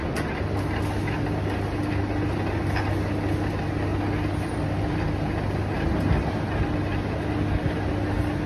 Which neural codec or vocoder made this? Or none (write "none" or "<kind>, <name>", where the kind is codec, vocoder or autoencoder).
none